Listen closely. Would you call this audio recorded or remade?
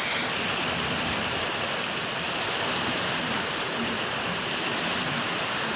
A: recorded